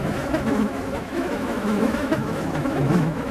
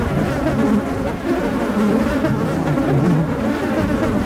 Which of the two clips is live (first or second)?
second